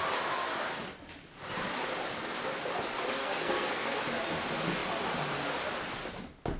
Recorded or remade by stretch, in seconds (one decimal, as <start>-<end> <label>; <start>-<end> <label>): 0.0-3.2 recorded; 3.2-4.0 remade; 4.0-6.6 recorded